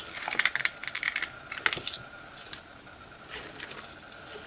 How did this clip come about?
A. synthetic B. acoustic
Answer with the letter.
B